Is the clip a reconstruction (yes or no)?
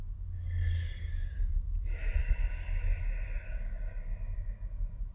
no